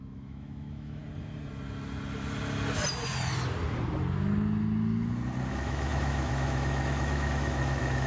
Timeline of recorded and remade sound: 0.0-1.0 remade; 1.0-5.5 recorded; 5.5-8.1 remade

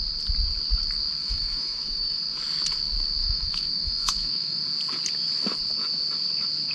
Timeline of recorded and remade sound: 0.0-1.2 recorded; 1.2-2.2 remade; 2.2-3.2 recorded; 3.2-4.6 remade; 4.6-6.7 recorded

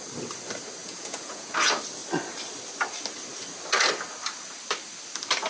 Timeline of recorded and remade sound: 0.0-0.8 recorded; 0.8-1.5 remade; 1.5-5.5 recorded

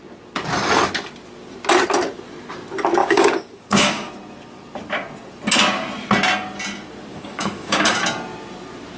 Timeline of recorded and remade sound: 0.0-3.0 recorded; 3.0-4.1 remade; 4.1-7.1 recorded; 7.1-8.0 remade; 8.0-9.0 recorded

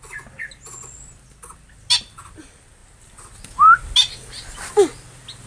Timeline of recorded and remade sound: 0.0-5.5 recorded

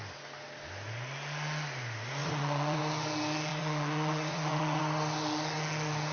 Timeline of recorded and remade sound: 0.0-2.2 recorded; 2.2-2.8 remade; 2.8-3.5 recorded; 3.5-4.8 remade; 4.8-6.1 recorded

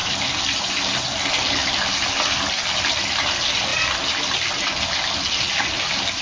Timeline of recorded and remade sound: 0.0-6.2 recorded